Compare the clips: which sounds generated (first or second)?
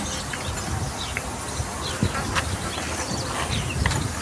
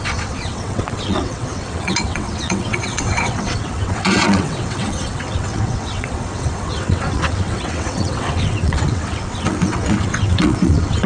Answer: second